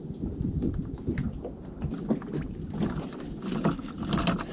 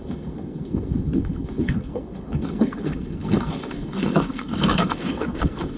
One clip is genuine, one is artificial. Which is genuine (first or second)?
first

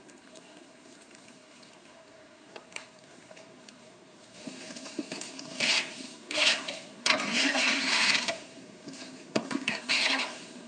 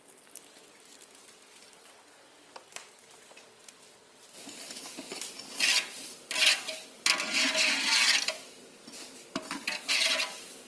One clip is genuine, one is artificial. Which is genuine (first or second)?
second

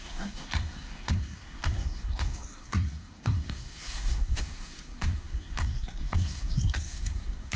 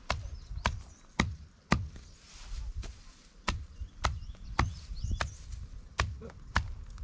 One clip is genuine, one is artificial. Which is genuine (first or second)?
second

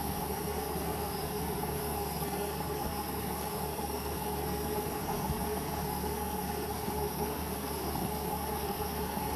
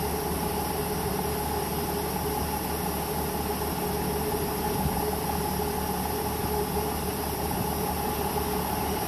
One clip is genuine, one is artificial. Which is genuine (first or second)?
second